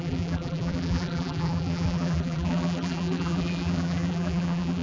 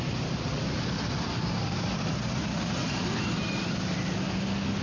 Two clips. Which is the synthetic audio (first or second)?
first